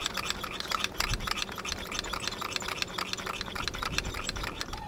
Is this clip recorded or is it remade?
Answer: recorded